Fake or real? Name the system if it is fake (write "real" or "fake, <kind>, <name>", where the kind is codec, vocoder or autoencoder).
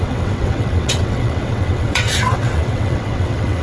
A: fake, vocoder, WaveNeXt